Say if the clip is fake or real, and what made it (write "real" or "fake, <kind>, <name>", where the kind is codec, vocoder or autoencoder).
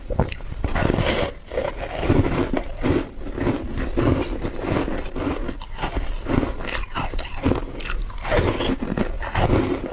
real